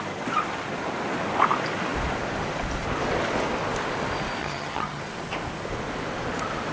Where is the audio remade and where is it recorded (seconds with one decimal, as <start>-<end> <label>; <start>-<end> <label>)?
0.0-4.4 recorded; 4.4-5.0 remade; 5.0-6.7 recorded